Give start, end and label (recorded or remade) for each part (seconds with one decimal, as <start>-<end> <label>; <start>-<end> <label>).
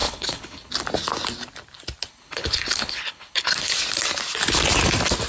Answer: 0.0-0.7 remade; 0.7-2.1 recorded; 2.1-3.7 remade; 3.7-5.3 recorded